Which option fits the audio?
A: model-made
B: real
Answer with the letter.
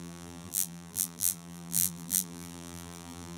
A